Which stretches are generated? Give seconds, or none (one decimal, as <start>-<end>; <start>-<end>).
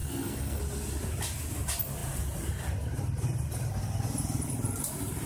0.0-0.6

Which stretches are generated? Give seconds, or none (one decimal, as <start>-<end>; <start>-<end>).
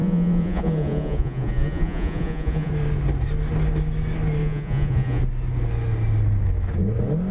0.0-2.7; 4.4-5.2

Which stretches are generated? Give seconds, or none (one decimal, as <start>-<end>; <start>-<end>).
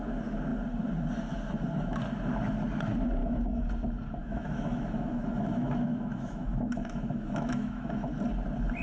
3.2-3.7; 4.2-8.1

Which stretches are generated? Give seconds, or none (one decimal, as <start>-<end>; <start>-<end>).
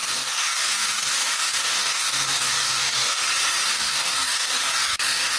0.0-3.2; 3.7-5.4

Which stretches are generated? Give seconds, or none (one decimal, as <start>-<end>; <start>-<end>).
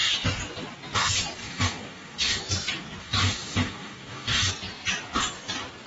1.4-2.4; 3.0-4.5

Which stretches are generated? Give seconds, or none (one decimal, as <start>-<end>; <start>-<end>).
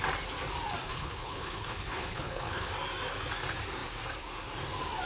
0.9-2.7